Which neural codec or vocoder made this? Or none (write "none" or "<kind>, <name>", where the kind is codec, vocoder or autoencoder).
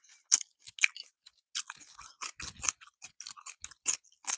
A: none